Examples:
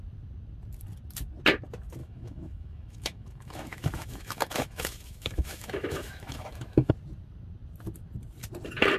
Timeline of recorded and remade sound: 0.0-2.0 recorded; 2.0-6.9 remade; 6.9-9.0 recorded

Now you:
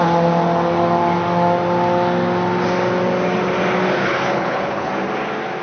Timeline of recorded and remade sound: 0.0-4.0 recorded; 4.0-4.9 remade; 4.9-5.6 recorded